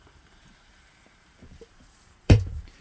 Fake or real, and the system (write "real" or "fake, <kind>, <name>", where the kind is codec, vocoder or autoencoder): fake, vocoder, BigVGAN v2